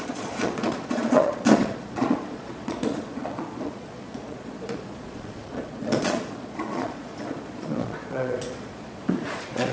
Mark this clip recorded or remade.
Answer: remade